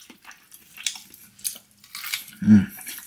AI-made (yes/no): no